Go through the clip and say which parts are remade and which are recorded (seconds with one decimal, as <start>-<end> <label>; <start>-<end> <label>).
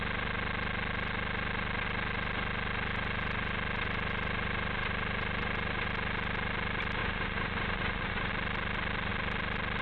0.0-7.0 recorded; 7.0-8.3 remade; 8.3-9.8 recorded